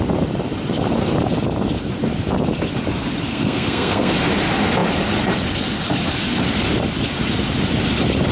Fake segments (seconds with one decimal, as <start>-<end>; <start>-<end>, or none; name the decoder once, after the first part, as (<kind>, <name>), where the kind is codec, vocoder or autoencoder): 3.3-4.1 (codec, SNAC)